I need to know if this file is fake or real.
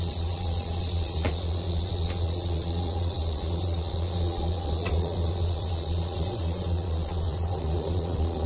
fake